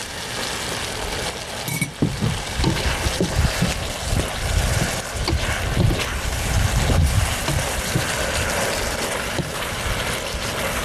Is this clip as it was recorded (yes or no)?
yes